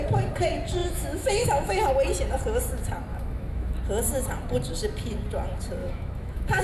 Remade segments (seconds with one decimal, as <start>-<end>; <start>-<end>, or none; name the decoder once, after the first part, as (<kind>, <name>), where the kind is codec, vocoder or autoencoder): 0.8-1.9 (autoencoder, DAC-VAE); 3.1-3.8; 5.8-6.6